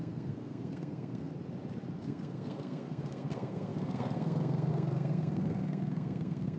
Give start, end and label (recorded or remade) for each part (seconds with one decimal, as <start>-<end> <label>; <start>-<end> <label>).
0.0-1.3 remade; 1.3-2.0 recorded; 2.0-6.6 remade